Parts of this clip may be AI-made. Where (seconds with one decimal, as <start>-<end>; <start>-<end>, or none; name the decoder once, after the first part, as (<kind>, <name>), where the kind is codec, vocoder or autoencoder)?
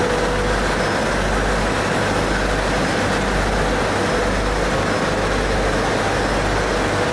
none